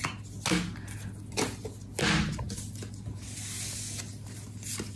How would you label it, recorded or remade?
recorded